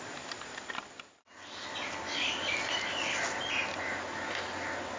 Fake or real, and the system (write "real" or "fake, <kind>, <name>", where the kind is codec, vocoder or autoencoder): real